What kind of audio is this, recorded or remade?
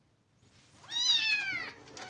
recorded